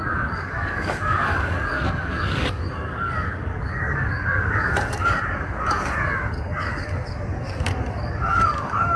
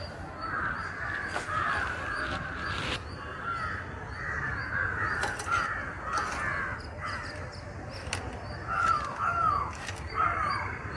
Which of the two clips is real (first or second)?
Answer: second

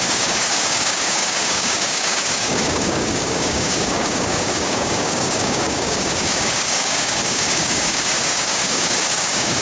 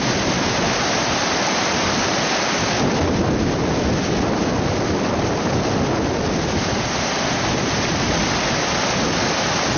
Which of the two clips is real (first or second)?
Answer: second